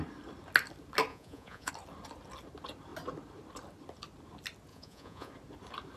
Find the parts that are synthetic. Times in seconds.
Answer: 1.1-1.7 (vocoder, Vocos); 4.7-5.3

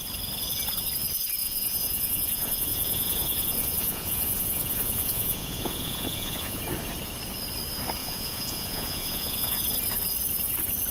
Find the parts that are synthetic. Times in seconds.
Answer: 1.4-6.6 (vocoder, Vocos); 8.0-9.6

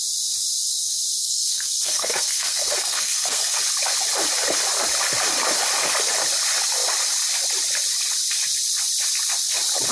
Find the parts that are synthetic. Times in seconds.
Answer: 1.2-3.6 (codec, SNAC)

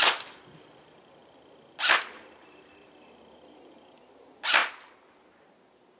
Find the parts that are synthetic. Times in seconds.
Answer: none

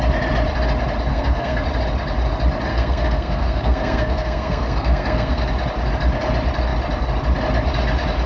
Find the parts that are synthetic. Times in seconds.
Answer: 1.1-1.6 (codec, SNAC); 2.7-5.4

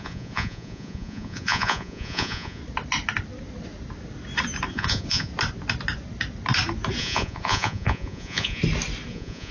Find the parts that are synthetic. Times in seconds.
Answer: 0.0-2.6 (vocoder, Vocos); 4.7-5.3; 7.0-8.6; 9.1-9.5